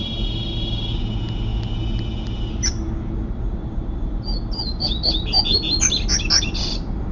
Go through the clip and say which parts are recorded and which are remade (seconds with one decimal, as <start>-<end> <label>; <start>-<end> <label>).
0.0-7.1 recorded